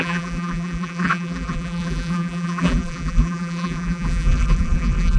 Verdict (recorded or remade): remade